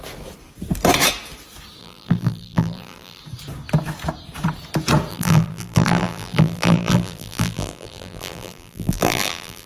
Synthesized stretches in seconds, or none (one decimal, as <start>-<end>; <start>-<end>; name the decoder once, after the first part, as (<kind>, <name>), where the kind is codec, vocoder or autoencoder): 1.8-3.2 (vocoder, BigVGAN v2); 5.1-9.7